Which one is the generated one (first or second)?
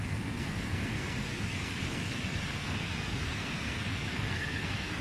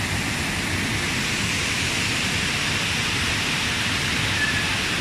first